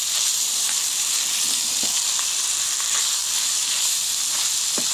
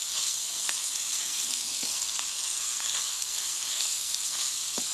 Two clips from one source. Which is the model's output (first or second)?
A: second